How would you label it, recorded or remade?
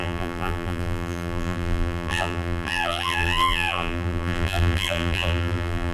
remade